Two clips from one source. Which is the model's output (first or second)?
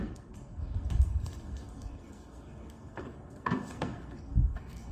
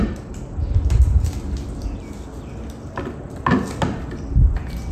first